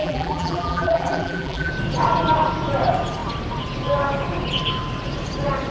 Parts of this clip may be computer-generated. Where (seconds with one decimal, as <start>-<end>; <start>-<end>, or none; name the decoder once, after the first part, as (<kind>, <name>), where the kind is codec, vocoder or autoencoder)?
0.0-1.7 (vocoder, BigVGAN v2)